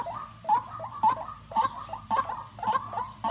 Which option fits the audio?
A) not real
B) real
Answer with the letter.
B